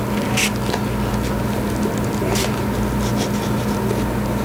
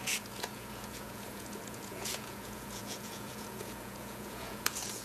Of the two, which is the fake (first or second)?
second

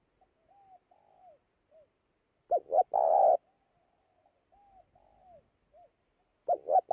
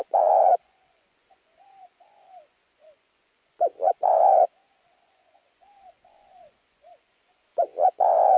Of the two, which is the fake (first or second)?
second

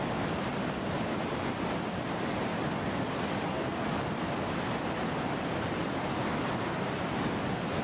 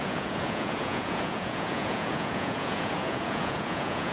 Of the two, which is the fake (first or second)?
second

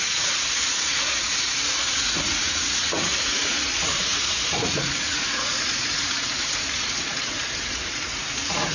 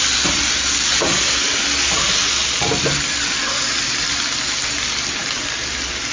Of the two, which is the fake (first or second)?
first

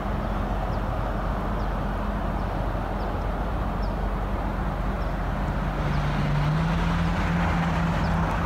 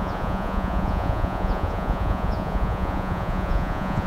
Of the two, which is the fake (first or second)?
second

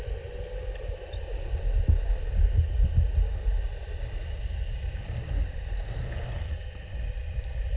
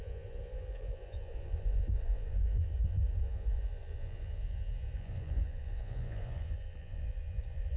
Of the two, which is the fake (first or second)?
second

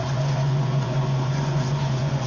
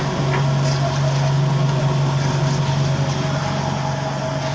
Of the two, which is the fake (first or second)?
first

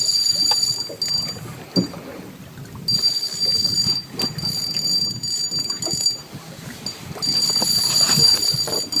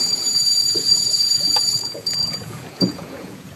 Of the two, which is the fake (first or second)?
second